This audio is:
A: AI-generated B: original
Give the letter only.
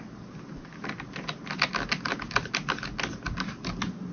B